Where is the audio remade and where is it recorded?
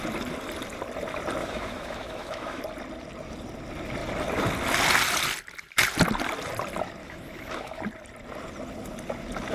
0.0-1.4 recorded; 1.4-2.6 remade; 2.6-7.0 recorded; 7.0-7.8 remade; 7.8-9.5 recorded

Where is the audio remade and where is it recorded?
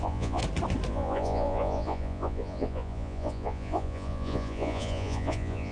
0.0-0.4 remade; 0.4-0.9 recorded; 0.9-5.7 remade